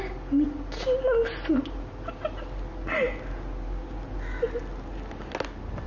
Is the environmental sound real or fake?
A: real